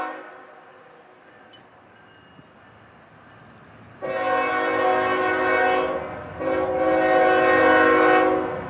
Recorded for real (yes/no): yes